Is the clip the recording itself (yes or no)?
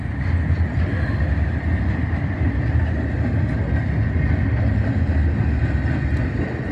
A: yes